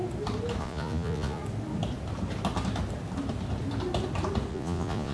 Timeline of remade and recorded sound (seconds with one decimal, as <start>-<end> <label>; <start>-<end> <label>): 0.0-0.6 recorded; 0.6-1.4 remade; 1.4-4.5 recorded; 4.5-5.1 remade